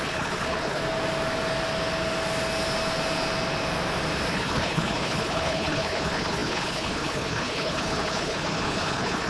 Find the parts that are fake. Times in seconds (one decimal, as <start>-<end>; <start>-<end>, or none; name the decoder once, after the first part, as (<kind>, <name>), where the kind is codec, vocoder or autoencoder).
0.0-0.8 (codec, HILCodec); 4.3-9.3